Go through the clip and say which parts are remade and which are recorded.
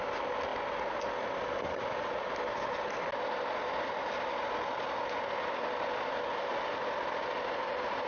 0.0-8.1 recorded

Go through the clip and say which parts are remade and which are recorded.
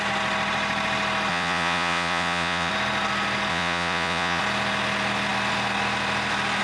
0.0-1.3 recorded; 1.3-2.7 remade; 2.7-3.5 recorded; 3.5-4.4 remade; 4.4-6.6 recorded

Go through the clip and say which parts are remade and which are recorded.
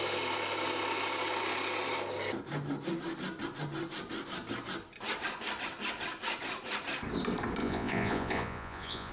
0.0-7.6 recorded; 7.6-9.1 remade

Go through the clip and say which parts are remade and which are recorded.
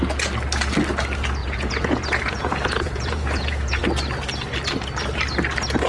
0.0-1.4 recorded; 1.4-3.8 remade; 3.8-5.9 recorded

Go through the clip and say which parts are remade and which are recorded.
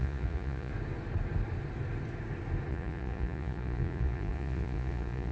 0.0-0.7 remade; 0.7-2.7 recorded; 2.7-5.3 remade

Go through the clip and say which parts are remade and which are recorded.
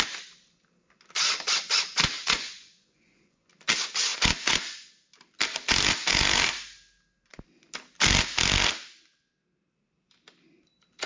0.0-2.2 recorded; 2.2-3.5 remade; 3.5-4.1 recorded; 4.1-4.9 remade; 4.9-11.1 recorded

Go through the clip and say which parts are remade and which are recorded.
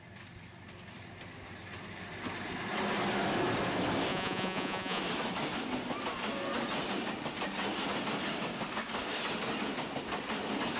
0.0-4.1 recorded; 4.1-5.0 remade; 5.0-10.8 recorded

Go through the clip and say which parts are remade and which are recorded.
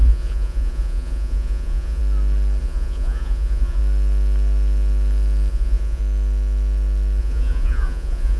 0.0-2.0 remade; 2.0-2.6 recorded; 2.6-3.8 remade; 3.8-5.5 recorded; 5.5-6.0 remade; 6.0-7.2 recorded; 7.2-8.4 remade